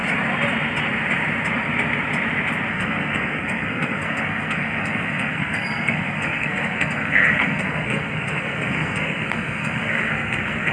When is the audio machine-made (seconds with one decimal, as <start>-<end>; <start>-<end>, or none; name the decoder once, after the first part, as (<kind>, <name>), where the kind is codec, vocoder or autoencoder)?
2.7-10.7 (codec, SNAC)